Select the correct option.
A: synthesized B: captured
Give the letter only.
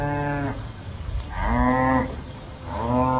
A